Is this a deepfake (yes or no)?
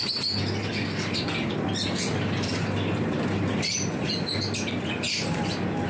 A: no